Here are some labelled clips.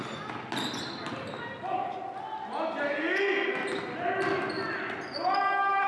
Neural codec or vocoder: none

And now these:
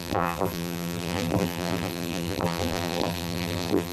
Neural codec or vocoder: vocoder, BigVGAN v2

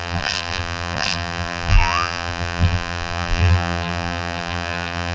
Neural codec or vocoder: vocoder, BigVGAN v2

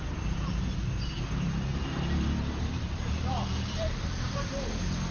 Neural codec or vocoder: vocoder, BigVGAN v2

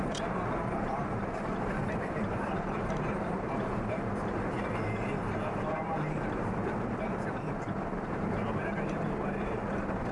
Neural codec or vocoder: vocoder, BigVGAN v2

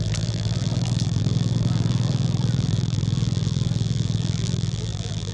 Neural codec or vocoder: vocoder, BigVGAN v2